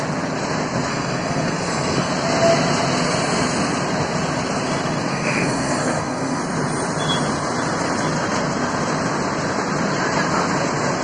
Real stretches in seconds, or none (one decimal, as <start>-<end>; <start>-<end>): 0.0-0.9; 2.1-5.1; 6.4-11.0